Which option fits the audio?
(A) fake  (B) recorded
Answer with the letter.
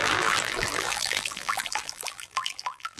A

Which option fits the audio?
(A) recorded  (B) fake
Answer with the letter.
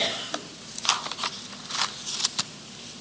A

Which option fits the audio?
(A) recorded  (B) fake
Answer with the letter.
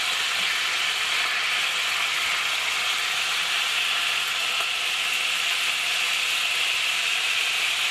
A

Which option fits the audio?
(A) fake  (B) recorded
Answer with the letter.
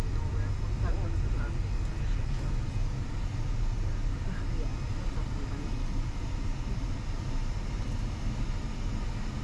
B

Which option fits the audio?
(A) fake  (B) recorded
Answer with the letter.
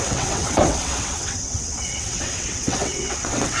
A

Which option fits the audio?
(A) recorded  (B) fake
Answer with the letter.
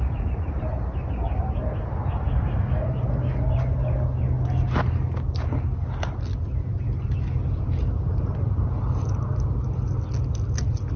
A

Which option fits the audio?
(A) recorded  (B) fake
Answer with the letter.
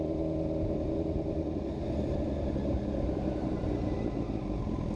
A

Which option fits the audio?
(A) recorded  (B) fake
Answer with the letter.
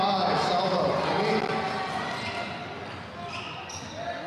A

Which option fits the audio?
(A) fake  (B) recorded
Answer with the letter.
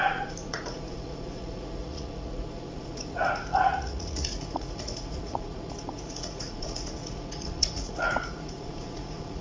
A